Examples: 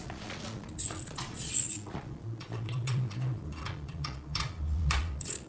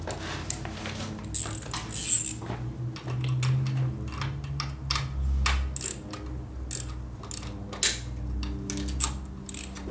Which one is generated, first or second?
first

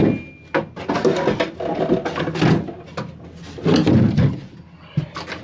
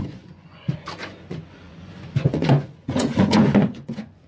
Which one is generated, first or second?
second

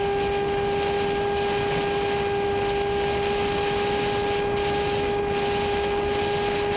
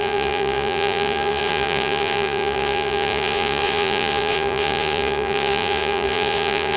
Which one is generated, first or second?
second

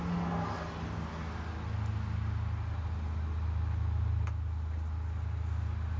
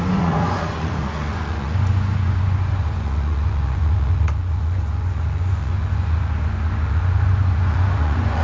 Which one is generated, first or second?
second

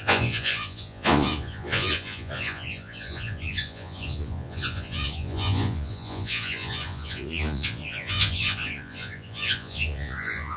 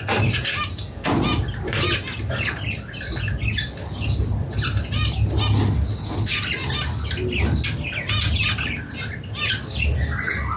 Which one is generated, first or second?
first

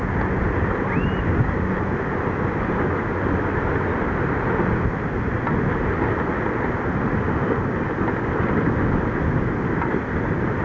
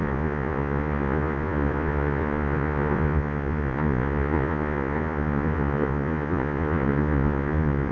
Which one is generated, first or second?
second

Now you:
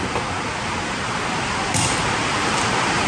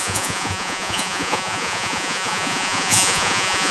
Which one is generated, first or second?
second